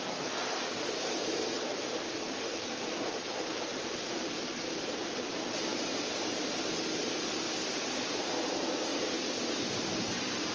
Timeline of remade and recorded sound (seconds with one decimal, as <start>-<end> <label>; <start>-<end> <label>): 0.0-8.9 remade; 8.9-9.8 recorded; 9.8-10.5 remade